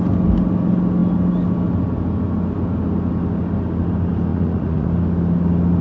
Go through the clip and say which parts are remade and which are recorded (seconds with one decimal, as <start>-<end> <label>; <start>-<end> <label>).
0.0-4.3 recorded; 4.3-4.9 remade; 4.9-5.8 recorded